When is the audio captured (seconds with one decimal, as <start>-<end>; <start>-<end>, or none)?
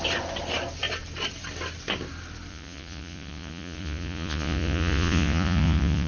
0.0-2.5